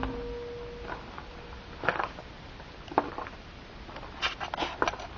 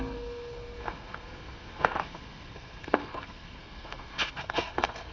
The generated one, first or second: second